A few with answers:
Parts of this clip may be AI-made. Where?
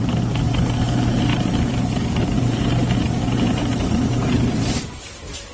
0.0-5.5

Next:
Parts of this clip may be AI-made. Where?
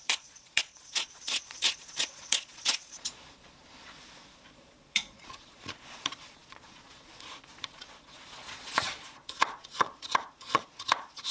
0.0-11.3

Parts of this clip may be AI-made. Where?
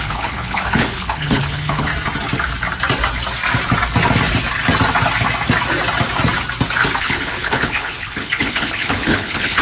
0.0-1.9; 7.0-9.6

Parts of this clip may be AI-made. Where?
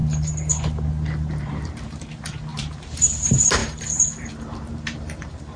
1.3-5.6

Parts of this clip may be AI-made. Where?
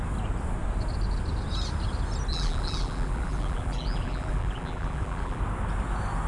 2.3-5.4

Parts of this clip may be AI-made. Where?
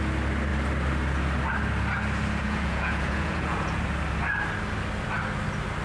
2.4-3.8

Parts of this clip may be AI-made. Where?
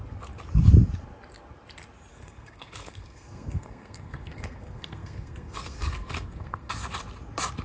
2.1-6.7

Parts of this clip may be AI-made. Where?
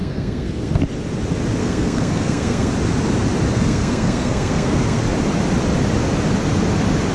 0.0-0.8; 1.6-2.7; 3.5-5.0